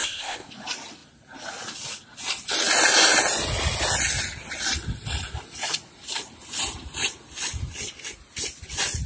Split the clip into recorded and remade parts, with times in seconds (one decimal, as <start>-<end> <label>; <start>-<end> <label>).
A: 0.0-0.5 remade; 0.5-9.1 recorded